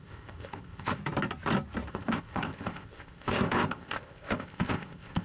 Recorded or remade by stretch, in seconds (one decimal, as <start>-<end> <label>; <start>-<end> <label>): 0.0-1.0 remade; 1.0-1.9 recorded; 1.9-5.2 remade